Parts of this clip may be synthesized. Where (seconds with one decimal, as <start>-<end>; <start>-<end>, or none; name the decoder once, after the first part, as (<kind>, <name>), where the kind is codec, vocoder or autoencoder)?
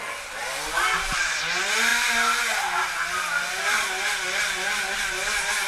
none